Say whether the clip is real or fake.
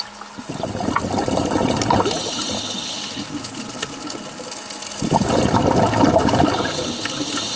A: real